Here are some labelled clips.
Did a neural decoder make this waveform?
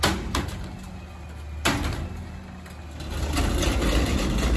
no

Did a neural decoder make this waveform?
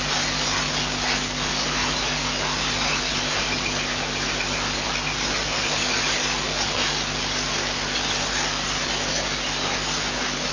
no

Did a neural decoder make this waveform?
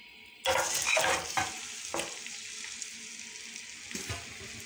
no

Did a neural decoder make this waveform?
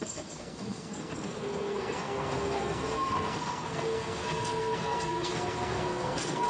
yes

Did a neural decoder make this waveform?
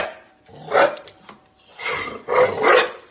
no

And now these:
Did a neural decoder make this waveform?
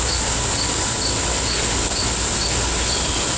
no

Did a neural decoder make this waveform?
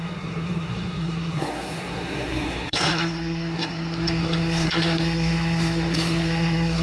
yes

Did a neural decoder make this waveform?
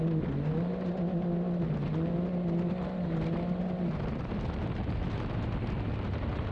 no